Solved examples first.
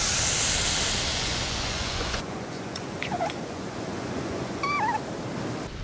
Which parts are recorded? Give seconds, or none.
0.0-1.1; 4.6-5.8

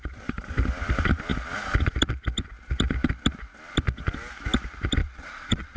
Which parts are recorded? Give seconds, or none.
0.0-5.0